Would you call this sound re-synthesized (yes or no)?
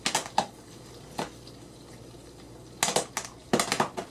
no